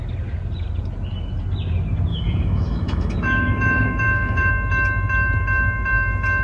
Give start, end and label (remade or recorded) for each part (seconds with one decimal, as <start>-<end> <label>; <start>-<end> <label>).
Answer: 0.0-2.1 recorded; 2.1-4.5 remade; 4.5-6.4 recorded